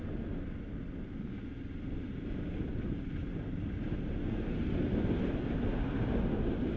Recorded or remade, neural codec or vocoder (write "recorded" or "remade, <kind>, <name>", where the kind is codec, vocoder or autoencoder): recorded